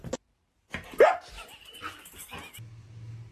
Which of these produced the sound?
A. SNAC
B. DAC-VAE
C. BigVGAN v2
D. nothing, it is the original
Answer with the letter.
D